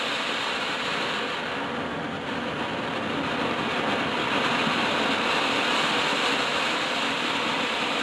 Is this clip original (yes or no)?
no